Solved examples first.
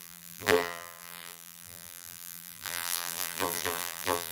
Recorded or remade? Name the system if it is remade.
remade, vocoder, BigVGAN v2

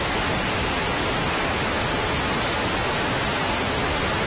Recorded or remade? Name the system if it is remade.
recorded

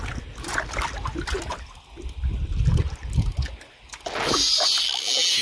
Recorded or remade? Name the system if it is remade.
recorded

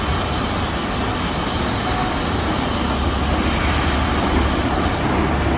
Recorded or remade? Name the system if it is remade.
recorded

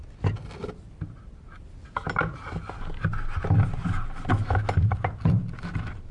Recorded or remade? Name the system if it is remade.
recorded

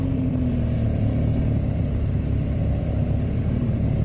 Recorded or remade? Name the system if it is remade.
remade, vocoder, BigVGAN v2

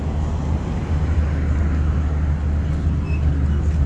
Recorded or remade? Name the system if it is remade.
recorded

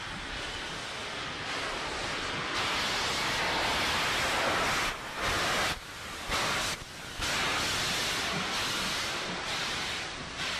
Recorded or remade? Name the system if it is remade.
recorded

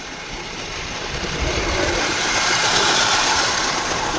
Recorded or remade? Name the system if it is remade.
remade, vocoder, BigVGAN v2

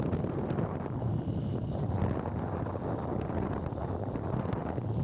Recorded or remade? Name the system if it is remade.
recorded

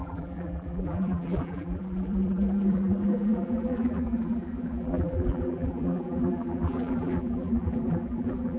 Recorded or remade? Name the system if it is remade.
remade, vocoder, BigVGAN v2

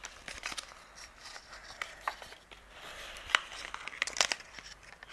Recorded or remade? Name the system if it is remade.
remade, vocoder, BigVGAN v2